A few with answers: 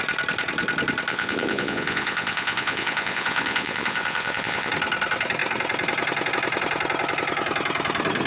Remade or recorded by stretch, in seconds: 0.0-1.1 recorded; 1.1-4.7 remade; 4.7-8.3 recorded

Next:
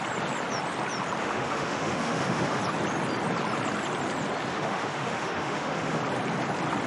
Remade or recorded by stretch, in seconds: 0.0-1.2 recorded; 1.2-2.6 remade; 2.6-4.5 recorded; 4.5-6.0 remade; 6.0-6.9 recorded

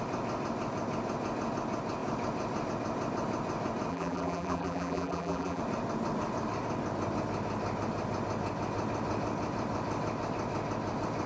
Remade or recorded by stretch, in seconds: 0.0-3.9 recorded; 3.9-5.6 remade; 5.6-11.3 recorded

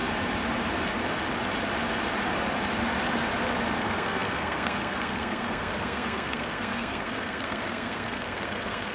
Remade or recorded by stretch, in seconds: 0.0-3.8 recorded; 3.8-8.9 remade

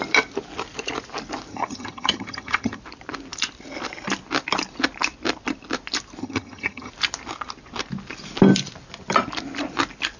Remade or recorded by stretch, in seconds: 0.0-1.5 recorded; 1.5-2.8 remade; 2.8-6.2 recorded; 6.2-6.9 remade; 6.9-10.2 recorded